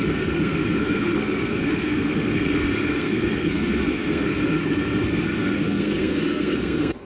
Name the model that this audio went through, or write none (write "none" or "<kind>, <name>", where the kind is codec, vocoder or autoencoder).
codec, SNAC